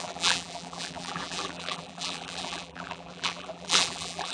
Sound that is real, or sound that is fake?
fake